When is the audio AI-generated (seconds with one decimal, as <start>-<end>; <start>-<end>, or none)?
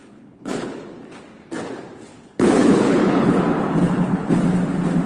0.0-0.9; 2.1-3.4; 3.8-4.3